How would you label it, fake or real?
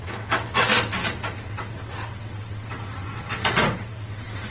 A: fake